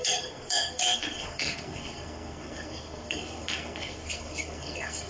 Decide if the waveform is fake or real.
fake